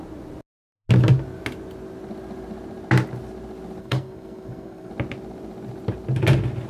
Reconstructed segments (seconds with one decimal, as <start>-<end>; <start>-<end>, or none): 3.8-4.9